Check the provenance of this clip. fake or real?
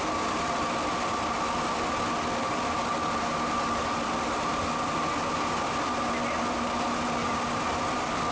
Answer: real